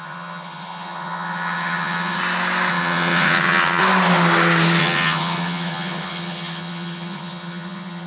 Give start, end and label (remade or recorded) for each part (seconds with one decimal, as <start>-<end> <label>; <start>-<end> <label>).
0.0-2.2 remade; 2.2-2.7 recorded; 2.7-3.8 remade; 3.8-4.8 recorded; 4.8-8.1 remade

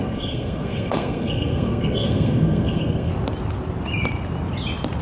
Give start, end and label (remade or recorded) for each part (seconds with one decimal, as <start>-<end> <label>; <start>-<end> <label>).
0.0-3.1 remade; 3.1-5.0 recorded

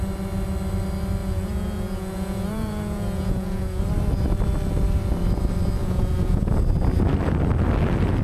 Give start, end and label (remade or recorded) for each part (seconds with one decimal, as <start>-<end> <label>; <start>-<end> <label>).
0.0-1.2 recorded; 1.2-3.8 remade; 3.8-5.8 recorded; 5.8-6.5 remade; 6.5-8.2 recorded

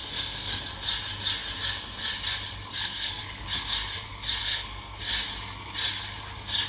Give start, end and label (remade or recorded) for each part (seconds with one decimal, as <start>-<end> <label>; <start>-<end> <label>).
0.0-0.6 remade; 0.6-2.7 recorded; 2.7-3.2 remade; 3.2-4.4 recorded; 4.4-5.0 remade; 5.0-6.7 recorded

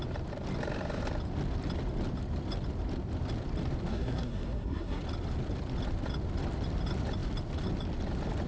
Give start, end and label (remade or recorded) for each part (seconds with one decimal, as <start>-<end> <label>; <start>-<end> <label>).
0.0-3.9 recorded; 3.9-5.0 remade; 5.0-8.5 recorded

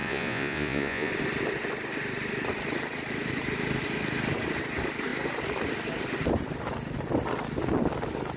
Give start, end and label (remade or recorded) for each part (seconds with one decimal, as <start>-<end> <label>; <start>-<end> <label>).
0.0-1.1 remade; 1.1-8.4 recorded

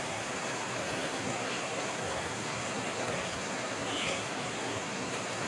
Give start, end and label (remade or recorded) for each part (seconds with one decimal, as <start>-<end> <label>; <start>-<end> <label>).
0.0-5.5 remade